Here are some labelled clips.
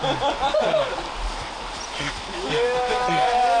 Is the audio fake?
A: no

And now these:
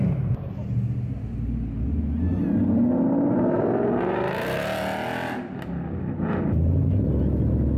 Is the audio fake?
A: no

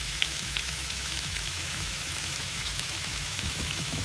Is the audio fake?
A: yes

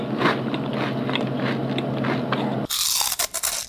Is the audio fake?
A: no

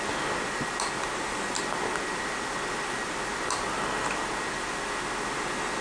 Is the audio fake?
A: no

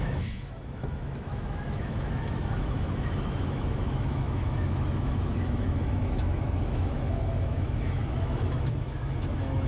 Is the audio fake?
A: yes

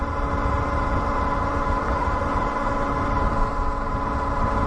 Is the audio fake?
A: no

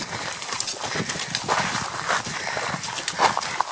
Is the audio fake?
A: no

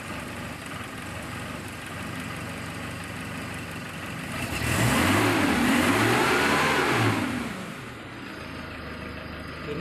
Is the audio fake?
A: no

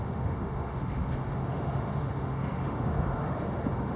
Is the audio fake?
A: yes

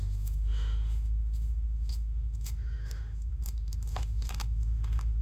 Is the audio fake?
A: yes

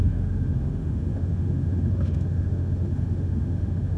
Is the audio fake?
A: yes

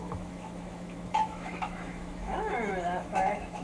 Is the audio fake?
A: yes